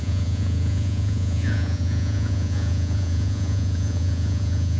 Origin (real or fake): fake